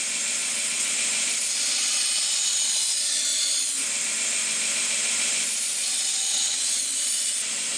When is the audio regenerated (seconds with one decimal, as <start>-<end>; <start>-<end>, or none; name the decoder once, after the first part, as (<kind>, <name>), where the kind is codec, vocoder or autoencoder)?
0.4-0.9 (vocoder, WaveNeXt); 6.3-6.8